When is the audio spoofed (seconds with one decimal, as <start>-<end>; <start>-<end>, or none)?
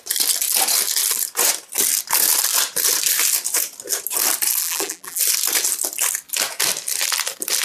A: 4.6-5.2